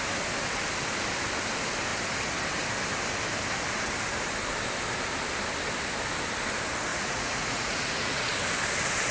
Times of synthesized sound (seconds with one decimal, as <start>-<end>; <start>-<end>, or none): 6.9-8.3